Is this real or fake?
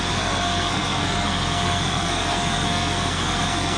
fake